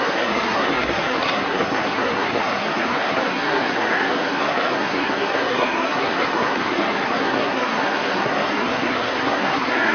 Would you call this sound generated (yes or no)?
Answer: yes